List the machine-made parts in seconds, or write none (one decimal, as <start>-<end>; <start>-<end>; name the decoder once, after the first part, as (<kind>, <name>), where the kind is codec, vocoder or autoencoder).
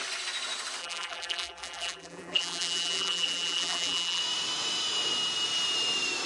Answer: 0.8-4.2 (vocoder, BigVGAN v2)